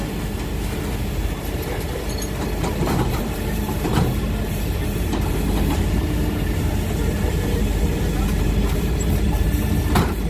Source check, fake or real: fake